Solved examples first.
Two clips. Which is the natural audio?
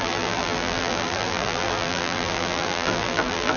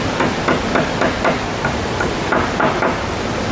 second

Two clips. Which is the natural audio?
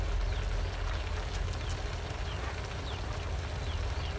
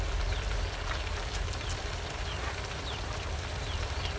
first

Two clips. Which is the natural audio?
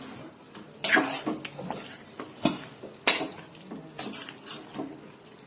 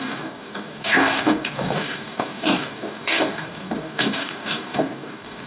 first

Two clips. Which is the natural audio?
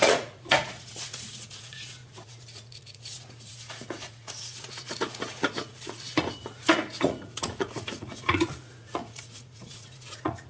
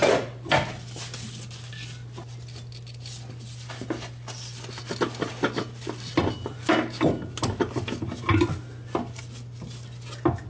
second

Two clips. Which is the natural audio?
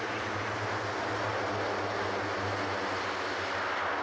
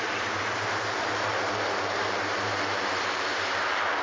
first